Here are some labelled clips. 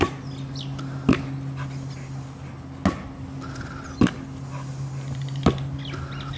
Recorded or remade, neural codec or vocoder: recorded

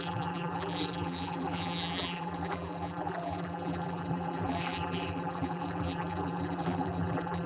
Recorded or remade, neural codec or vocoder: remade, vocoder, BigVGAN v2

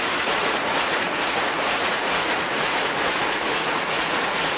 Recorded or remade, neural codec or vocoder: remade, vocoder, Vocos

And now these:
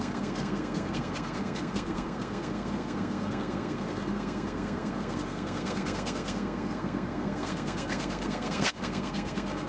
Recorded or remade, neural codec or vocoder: remade, codec, SNAC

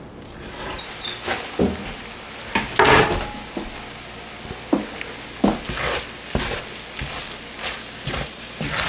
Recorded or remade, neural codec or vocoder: recorded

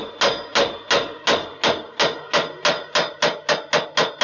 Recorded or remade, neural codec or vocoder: recorded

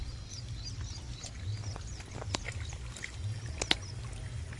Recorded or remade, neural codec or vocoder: recorded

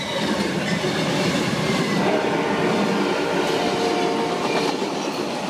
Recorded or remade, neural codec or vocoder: remade, vocoder, BigVGAN v2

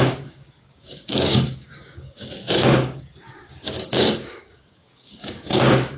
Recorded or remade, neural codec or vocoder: remade, codec, DAC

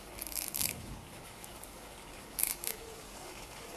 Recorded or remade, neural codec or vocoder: remade, codec, DAC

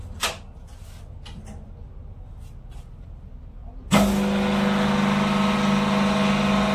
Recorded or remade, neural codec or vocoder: recorded